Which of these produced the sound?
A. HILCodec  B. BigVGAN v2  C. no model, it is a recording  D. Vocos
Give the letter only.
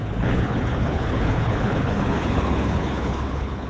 A